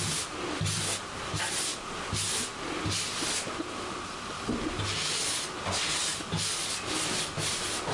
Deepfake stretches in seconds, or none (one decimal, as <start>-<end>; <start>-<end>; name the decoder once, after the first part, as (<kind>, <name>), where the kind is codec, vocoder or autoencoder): none